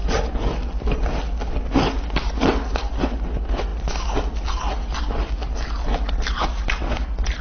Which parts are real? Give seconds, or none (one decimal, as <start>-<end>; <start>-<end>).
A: 0.0-7.4